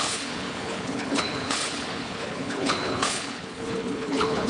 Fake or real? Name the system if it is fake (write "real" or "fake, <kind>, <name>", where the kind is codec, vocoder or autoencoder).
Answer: fake, codec, HILCodec